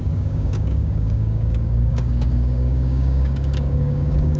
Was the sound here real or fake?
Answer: fake